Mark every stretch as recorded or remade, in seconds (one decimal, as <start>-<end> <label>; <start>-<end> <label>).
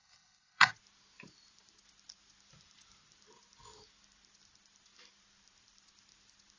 0.0-0.7 remade; 0.7-6.6 recorded